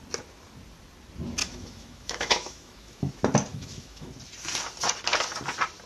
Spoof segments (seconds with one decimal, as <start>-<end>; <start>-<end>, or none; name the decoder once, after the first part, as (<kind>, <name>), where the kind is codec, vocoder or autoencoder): 1.4-3.1 (autoencoder, DAC-VAE); 3.5-4.1